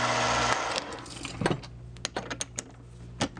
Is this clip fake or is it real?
real